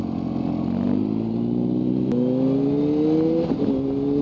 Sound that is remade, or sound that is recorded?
recorded